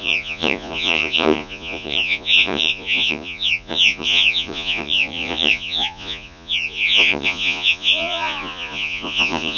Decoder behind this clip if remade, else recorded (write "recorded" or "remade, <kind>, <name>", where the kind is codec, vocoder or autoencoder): remade, vocoder, Vocos